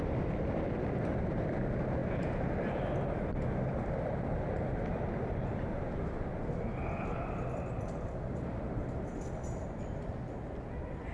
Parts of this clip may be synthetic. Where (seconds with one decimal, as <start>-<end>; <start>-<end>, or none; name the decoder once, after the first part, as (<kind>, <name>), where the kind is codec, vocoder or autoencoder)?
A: none